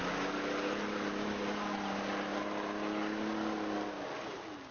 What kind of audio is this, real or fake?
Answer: real